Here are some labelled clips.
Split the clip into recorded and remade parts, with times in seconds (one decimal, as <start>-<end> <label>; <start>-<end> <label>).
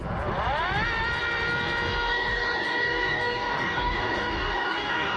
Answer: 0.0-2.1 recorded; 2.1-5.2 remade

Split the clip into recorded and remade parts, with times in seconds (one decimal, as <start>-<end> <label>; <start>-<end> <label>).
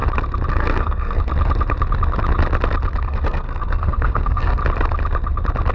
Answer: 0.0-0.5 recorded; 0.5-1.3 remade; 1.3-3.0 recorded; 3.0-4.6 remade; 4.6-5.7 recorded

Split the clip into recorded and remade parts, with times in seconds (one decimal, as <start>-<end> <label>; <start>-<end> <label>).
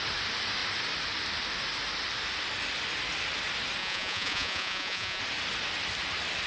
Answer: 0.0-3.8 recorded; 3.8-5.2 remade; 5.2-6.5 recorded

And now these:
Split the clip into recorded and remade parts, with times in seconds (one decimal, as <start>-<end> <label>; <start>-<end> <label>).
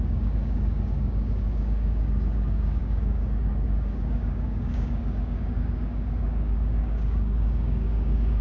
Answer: 0.0-8.4 remade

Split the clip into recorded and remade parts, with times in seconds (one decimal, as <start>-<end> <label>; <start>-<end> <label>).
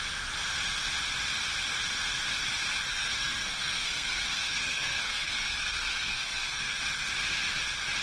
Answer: 0.0-2.9 recorded; 2.9-6.8 remade; 6.8-8.0 recorded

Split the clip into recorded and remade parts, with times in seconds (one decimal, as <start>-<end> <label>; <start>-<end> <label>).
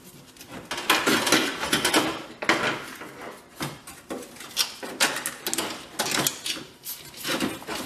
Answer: 0.0-7.9 recorded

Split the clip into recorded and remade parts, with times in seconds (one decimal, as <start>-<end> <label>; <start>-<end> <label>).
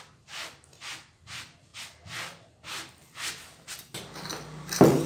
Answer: 0.0-5.1 recorded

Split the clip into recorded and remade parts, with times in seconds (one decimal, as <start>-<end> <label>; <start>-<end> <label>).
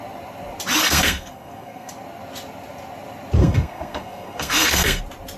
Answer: 0.0-0.8 recorded; 0.8-1.9 remade; 1.9-3.4 recorded; 3.4-5.0 remade; 5.0-5.4 recorded